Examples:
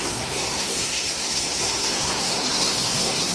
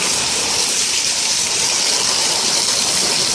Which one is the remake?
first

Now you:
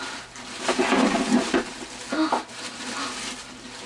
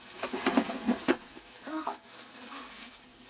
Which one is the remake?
second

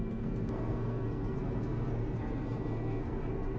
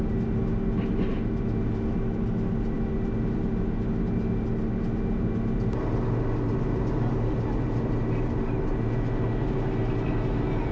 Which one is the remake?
first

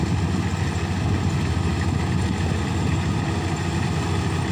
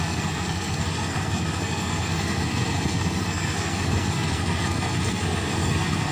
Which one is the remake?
second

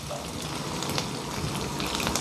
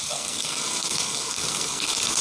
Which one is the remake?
second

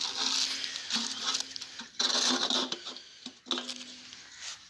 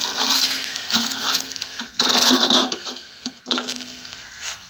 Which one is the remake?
second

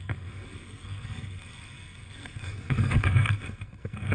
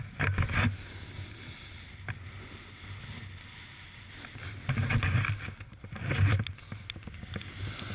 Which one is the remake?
first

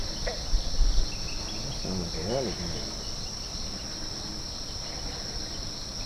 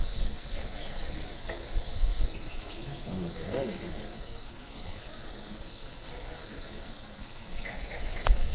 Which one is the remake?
second